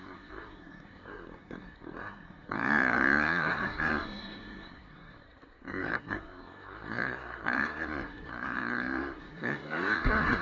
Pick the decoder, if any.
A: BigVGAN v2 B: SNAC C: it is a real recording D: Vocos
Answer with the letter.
B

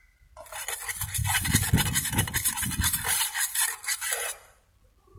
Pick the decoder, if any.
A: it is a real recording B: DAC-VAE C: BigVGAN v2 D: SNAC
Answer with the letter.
A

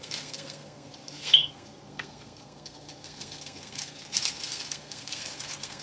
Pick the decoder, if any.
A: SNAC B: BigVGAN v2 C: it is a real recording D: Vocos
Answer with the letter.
A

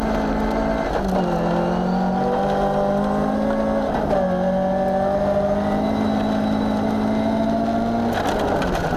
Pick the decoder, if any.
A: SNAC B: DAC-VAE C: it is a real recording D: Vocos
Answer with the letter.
C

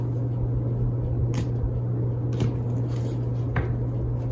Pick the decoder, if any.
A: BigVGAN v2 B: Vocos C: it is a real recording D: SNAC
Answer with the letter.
C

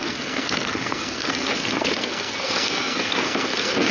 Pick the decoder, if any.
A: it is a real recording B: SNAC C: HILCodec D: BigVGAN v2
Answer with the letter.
B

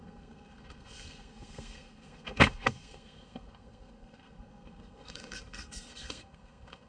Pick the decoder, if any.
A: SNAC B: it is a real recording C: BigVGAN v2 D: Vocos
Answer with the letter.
A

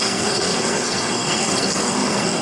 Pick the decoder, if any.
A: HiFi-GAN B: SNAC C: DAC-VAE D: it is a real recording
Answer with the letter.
B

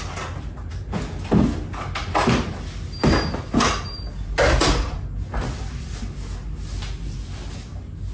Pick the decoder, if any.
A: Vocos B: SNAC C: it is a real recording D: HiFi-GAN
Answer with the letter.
C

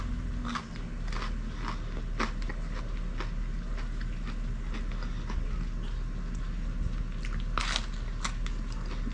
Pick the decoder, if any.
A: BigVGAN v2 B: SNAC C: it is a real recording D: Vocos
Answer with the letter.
C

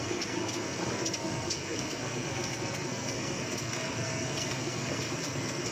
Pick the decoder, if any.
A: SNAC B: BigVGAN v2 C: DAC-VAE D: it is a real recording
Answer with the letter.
A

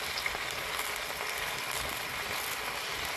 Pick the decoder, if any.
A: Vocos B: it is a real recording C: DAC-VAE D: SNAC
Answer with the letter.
B